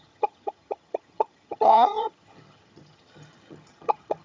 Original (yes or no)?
no